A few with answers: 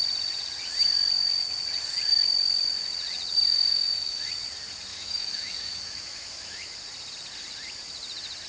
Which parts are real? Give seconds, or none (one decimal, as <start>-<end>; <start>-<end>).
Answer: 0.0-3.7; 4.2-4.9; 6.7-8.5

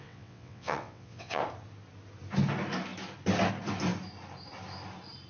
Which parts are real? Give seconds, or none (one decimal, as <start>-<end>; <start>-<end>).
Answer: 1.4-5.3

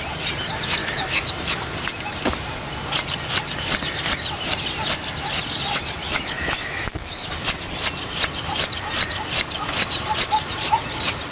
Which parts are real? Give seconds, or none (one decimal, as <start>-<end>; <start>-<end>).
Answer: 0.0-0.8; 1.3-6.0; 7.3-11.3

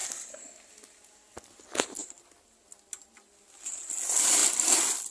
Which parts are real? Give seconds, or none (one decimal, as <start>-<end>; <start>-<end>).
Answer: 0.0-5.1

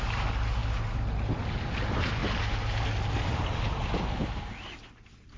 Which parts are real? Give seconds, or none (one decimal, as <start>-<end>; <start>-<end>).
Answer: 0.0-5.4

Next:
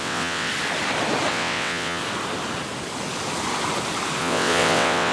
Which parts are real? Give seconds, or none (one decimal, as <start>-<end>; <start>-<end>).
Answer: 0.5-1.3; 2.0-4.2

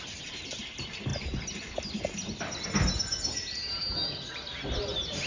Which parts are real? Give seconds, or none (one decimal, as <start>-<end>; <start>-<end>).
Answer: 0.0-5.3